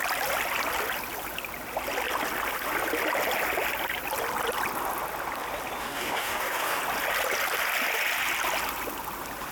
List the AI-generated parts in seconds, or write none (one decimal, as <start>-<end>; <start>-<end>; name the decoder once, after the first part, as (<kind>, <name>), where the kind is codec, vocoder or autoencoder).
5.8-6.8 (codec, DAC)